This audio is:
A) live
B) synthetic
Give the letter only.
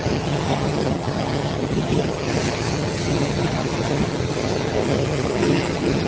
B